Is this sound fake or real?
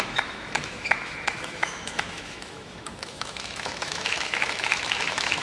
fake